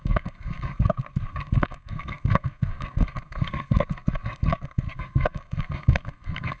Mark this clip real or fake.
fake